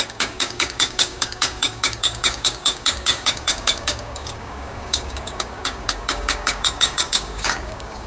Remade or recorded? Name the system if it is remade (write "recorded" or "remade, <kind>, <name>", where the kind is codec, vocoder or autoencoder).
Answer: remade, codec, DAC